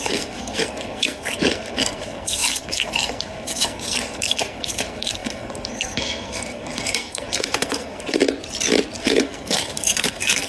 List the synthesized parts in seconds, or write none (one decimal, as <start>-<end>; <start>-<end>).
0.0-8.2; 9.0-10.5